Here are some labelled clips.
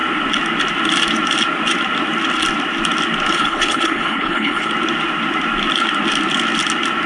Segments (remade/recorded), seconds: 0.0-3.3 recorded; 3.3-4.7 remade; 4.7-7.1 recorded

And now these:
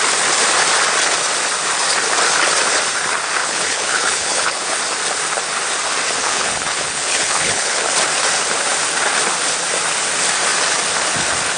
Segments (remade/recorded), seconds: 0.0-3.4 recorded; 3.4-4.8 remade; 4.8-6.2 recorded; 6.2-7.8 remade; 7.8-11.6 recorded

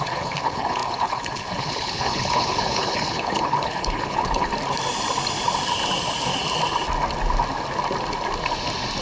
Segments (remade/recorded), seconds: 0.0-4.5 remade; 4.5-9.0 recorded

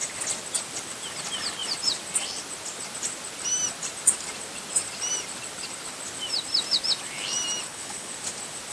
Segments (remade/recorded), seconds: 0.0-7.6 recorded; 7.6-8.1 remade; 8.1-8.7 recorded